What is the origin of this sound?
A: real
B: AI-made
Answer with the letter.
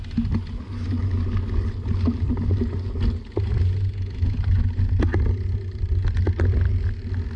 A